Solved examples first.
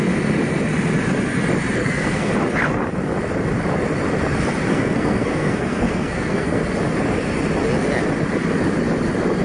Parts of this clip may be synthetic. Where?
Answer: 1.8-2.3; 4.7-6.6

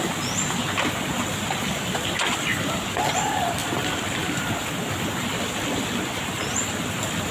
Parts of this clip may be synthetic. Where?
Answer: none

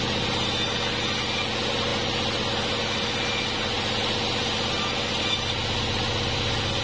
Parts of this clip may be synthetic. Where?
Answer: none

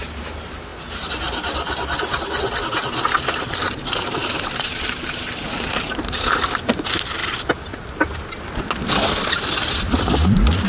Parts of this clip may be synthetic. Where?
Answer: 0.0-0.7; 3.2-7.2; 8.9-10.7

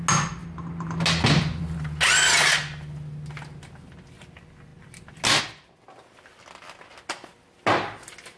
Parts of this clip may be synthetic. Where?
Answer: none

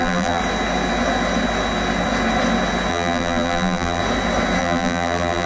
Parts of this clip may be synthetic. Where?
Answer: 0.0-0.4; 2.9-4.0; 4.6-5.5